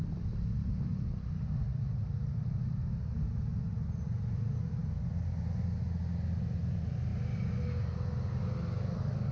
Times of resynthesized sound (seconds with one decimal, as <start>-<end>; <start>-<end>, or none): none